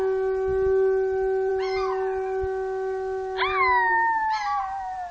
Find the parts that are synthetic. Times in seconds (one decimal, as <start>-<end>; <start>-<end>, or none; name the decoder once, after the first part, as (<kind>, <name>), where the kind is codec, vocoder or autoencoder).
none